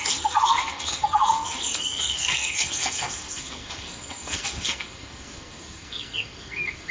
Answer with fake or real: fake